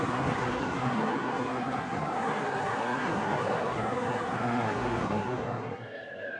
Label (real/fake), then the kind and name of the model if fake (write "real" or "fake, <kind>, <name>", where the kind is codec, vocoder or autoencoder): fake, codec, SNAC